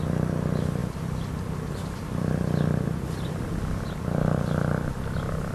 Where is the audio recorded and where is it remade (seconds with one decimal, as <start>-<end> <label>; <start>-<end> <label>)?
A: 0.0-0.8 recorded; 0.8-3.5 remade; 3.5-5.5 recorded